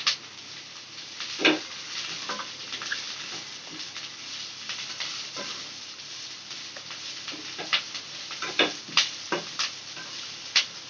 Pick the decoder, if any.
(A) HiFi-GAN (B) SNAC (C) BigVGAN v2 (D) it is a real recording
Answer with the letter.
D